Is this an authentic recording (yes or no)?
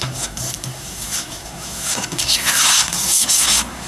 no